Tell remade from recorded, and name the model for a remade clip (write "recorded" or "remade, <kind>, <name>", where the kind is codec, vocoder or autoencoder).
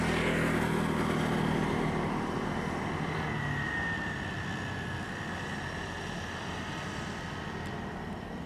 recorded